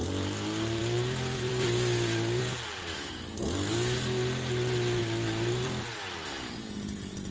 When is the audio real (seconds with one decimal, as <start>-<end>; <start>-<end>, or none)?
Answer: 0.0-0.8; 3.1-5.0; 6.7-7.3